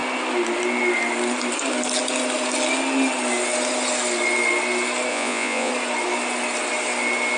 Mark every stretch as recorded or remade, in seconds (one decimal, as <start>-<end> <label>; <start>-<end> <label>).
0.0-5.1 recorded; 5.1-5.7 remade; 5.7-7.4 recorded